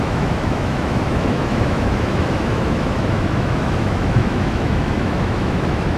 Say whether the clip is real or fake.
fake